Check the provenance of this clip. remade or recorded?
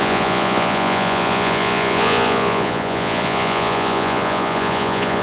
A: remade